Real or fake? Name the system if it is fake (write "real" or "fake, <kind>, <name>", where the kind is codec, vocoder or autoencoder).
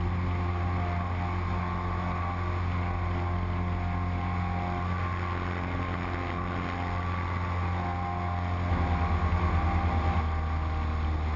real